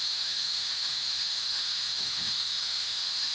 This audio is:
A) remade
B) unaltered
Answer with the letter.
A